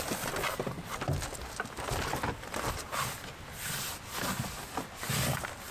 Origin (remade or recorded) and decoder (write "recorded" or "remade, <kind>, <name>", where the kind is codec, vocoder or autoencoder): recorded